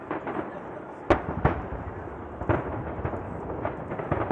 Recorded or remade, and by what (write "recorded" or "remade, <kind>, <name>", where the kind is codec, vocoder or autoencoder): recorded